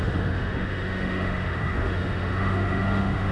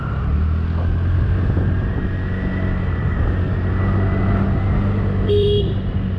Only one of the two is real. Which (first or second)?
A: second